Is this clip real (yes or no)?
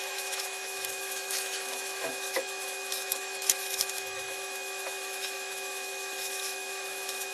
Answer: no